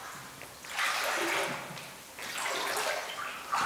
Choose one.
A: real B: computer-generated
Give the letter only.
A